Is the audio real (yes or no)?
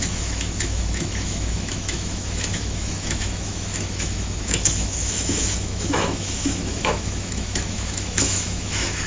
no